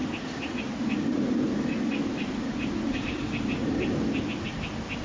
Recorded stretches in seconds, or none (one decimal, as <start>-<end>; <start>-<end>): 0.0-5.0